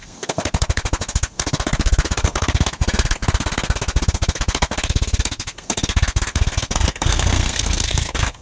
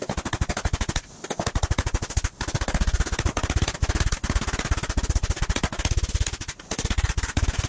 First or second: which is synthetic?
first